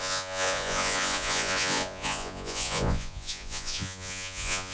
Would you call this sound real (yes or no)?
no